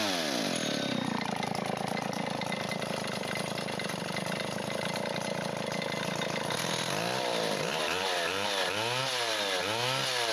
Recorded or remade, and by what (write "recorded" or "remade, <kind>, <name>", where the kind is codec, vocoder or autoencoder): recorded